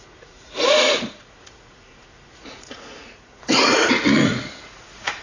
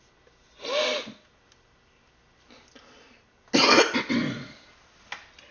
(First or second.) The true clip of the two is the second